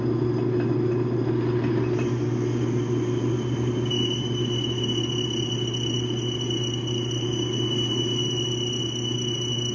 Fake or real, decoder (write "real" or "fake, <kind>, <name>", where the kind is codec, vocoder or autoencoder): real